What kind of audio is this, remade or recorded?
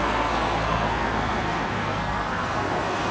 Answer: remade